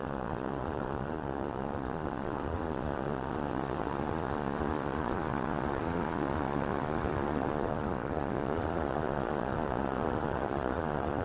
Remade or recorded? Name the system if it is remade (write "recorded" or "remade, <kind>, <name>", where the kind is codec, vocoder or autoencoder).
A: remade, vocoder, Vocos